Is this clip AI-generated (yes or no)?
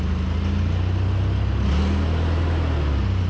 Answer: no